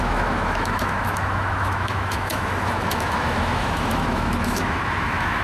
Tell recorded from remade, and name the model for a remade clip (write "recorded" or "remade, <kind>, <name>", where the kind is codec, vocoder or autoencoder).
remade, autoencoder, DAC-VAE